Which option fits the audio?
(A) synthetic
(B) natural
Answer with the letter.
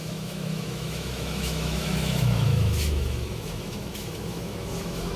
A